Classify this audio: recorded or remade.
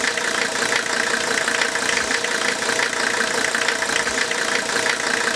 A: recorded